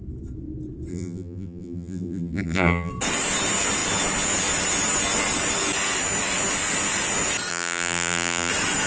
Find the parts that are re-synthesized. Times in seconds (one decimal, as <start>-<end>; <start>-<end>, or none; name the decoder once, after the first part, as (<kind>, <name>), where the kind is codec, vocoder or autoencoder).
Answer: 0.9-2.9 (vocoder, BigVGAN v2); 7.5-8.5